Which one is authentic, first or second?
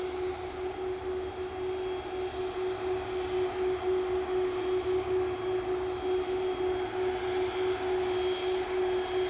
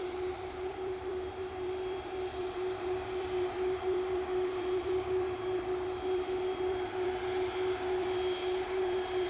first